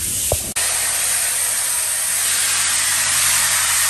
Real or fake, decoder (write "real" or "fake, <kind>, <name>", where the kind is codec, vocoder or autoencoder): real